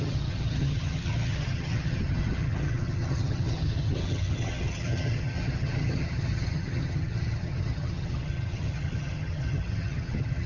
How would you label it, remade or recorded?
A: remade